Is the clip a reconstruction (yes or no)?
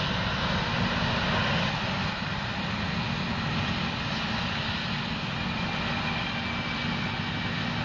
no